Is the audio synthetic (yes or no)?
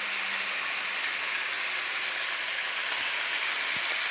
no